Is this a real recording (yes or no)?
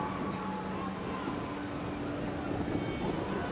yes